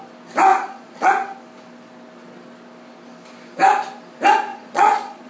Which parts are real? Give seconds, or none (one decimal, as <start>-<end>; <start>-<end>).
0.0-0.5; 1.1-4.5